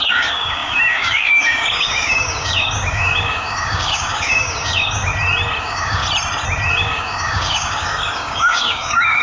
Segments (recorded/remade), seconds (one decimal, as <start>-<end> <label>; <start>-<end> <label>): 0.0-5.1 remade; 5.1-5.6 recorded; 5.6-6.0 remade; 6.0-6.7 recorded; 6.7-9.2 remade